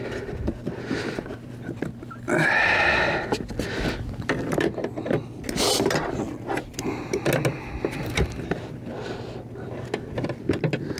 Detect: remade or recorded recorded